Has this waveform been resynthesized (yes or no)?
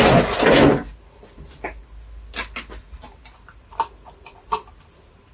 no